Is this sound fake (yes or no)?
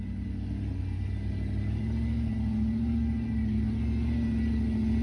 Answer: no